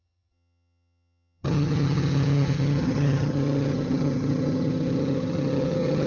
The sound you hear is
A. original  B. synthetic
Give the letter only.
B